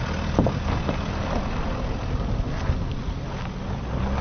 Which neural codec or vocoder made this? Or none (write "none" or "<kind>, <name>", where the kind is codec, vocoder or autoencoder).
none